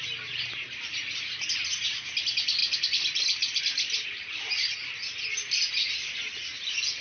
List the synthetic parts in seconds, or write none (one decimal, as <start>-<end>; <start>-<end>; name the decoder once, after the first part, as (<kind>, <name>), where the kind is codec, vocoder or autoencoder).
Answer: none